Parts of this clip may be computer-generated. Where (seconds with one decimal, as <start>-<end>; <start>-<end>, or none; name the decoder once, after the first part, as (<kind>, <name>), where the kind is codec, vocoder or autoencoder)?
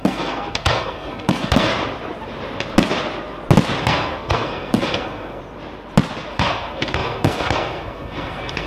0.0-1.7 (codec, SNAC); 3.8-5.4; 6.3-8.7